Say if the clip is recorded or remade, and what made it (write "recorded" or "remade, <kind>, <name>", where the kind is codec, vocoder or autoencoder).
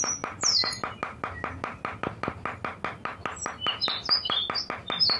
recorded